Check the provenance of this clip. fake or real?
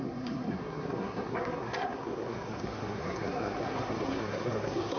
fake